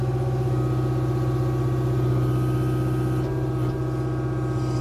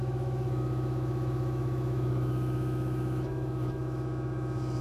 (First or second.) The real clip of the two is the first